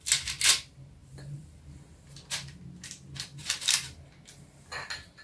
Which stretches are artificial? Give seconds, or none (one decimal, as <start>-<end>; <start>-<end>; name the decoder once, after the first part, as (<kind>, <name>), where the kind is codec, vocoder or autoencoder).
1.0-1.8 (vocoder, BigVGAN v2); 3.4-4.1